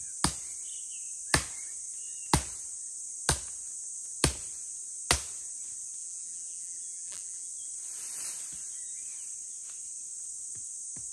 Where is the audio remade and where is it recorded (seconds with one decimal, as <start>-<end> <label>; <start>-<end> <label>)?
0.0-6.0 recorded; 6.0-7.5 remade; 7.5-11.1 recorded